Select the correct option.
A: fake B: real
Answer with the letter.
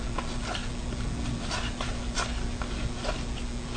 B